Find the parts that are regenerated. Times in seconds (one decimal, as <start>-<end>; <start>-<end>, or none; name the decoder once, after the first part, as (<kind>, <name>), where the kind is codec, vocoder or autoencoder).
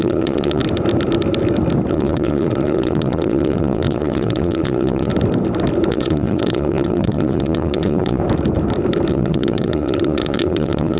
0.0-0.6 (vocoder, Vocos); 1.9-5.1; 5.9-8.2; 9.1-11.0